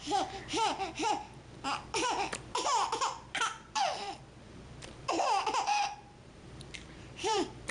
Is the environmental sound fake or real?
fake